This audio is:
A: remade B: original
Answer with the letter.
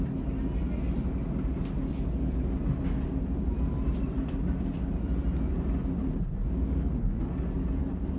B